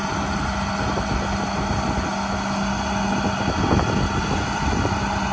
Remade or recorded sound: recorded